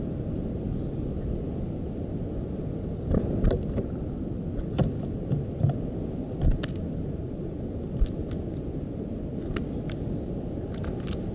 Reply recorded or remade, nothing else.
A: recorded